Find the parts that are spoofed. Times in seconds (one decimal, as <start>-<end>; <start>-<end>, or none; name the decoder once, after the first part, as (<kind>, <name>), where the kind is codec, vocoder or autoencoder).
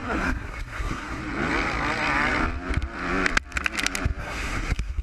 0.0-1.2 (codec, SNAC); 4.2-5.0